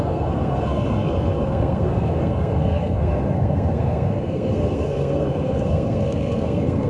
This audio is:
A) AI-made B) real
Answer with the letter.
A